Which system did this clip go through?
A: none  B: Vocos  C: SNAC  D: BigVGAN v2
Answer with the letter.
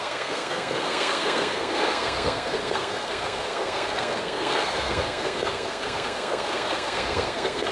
C